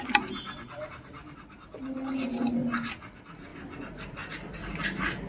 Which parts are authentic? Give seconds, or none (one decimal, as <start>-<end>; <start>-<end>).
0.0-3.5